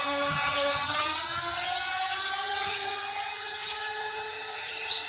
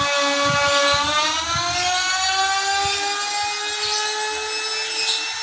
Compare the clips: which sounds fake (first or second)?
first